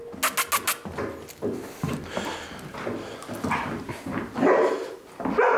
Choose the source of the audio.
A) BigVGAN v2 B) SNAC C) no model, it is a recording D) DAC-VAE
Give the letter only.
C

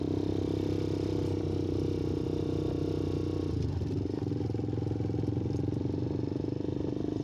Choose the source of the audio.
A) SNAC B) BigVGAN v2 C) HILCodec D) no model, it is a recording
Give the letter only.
D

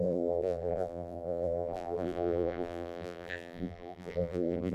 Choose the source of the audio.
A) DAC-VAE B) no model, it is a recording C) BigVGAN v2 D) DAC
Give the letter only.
C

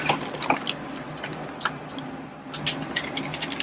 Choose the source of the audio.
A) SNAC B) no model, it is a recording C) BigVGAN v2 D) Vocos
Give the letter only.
B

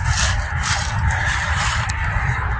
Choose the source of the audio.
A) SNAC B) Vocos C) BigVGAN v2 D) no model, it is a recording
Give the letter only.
C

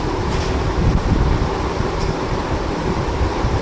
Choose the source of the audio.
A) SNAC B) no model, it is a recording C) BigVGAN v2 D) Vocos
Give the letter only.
C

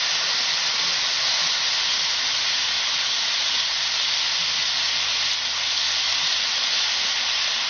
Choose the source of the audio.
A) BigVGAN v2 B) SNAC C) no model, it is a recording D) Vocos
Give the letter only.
C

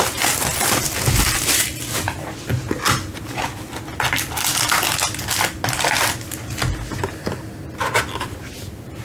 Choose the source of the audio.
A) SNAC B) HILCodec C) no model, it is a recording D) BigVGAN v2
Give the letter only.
C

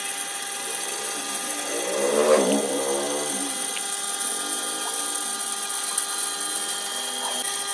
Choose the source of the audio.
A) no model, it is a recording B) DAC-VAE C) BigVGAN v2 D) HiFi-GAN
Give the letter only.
A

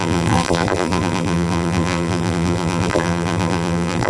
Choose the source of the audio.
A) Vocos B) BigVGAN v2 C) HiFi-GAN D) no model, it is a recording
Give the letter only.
B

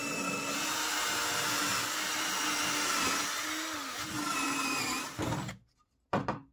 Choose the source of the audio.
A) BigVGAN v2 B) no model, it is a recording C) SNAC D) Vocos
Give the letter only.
B